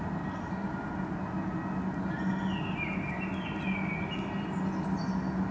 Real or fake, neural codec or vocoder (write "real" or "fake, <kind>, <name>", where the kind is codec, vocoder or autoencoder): real